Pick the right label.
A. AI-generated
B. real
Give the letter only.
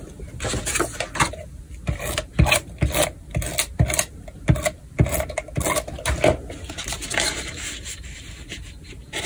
B